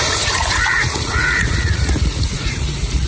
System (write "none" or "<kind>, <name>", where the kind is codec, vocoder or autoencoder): vocoder, Vocos